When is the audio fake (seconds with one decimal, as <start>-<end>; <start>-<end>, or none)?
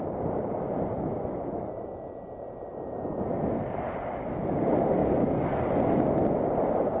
5.0-5.7